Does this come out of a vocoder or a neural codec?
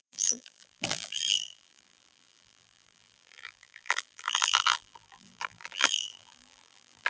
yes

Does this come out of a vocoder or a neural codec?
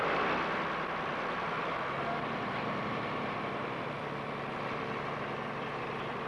yes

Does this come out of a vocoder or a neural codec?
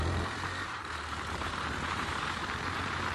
yes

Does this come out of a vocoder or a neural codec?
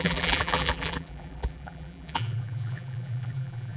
yes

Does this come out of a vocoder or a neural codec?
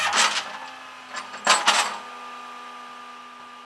no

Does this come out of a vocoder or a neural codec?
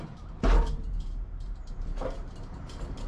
yes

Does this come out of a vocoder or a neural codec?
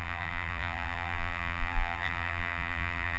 yes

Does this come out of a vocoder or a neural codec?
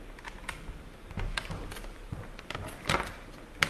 no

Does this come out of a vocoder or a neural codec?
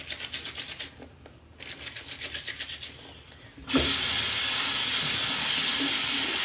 no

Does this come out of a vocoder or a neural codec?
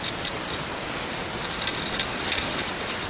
no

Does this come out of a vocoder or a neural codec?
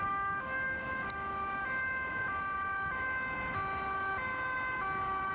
no